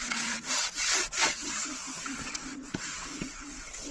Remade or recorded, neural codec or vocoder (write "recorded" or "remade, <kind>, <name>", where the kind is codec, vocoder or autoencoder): remade, vocoder, WaveNeXt